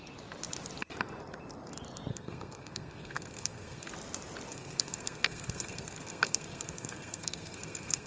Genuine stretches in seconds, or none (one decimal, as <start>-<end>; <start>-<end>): 0.0-2.1; 3.9-4.5